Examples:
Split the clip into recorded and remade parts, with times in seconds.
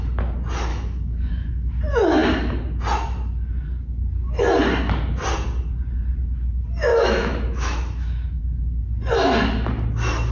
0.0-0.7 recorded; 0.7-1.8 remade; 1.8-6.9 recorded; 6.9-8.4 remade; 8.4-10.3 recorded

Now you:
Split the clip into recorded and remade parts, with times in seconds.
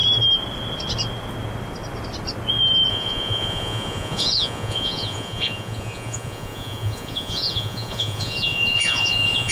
0.0-2.9 recorded; 2.9-9.5 remade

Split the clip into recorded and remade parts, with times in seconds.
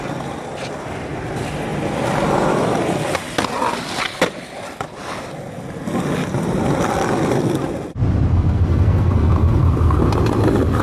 0.0-8.3 recorded; 8.3-10.0 remade; 10.0-10.8 recorded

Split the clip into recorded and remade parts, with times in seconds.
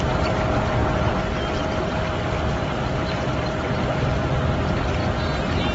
0.0-1.9 recorded; 1.9-4.2 remade; 4.2-5.7 recorded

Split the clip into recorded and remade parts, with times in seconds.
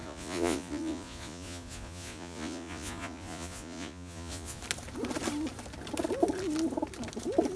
0.0-4.6 remade; 4.6-7.6 recorded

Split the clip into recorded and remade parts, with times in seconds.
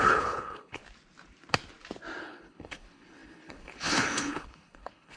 0.0-0.8 remade; 0.8-2.2 recorded; 2.2-5.2 remade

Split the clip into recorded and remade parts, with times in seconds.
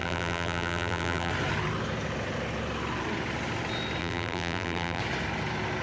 0.0-1.3 remade; 1.3-4.0 recorded; 4.0-5.0 remade; 5.0-5.8 recorded